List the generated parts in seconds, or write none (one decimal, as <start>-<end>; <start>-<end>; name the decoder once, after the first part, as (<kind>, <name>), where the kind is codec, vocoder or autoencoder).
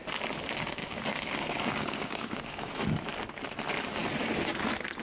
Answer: 0.8-2.7 (codec, DAC)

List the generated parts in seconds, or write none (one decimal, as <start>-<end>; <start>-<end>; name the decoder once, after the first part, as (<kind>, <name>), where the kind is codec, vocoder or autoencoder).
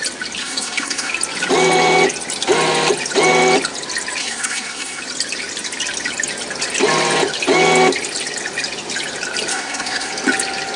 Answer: 0.4-1.1 (codec, SNAC); 4.2-5.0; 9.5-10.1